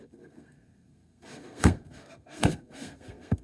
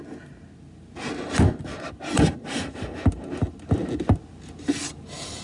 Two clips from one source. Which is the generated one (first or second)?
first